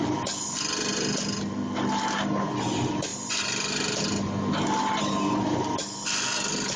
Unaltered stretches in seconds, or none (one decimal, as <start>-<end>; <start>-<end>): 0.0-6.8